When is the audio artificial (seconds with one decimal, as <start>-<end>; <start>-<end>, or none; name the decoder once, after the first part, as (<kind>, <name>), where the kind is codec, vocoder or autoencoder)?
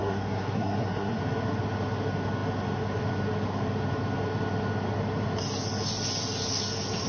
0.0-1.2 (codec, SNAC)